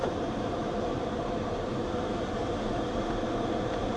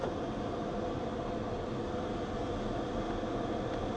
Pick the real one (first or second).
second